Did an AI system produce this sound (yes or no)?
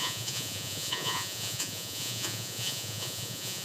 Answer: yes